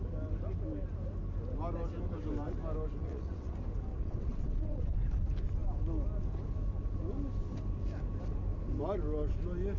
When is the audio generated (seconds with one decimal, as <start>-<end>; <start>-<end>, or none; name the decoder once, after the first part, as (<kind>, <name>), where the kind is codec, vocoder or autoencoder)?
3.0-3.5 (vocoder, WaveNeXt); 3.9-4.8